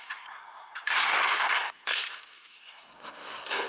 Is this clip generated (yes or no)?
yes